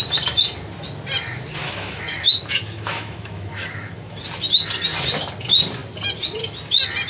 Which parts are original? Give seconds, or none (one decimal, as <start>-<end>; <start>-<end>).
0.0-1.6; 4.2-7.1